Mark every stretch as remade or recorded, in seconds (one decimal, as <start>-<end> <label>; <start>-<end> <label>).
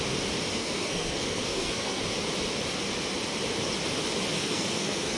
0.0-0.5 recorded; 0.5-2.0 remade; 2.0-4.4 recorded; 4.4-5.2 remade